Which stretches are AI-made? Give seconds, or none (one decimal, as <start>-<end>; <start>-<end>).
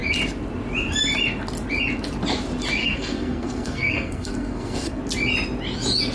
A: 2.8-5.0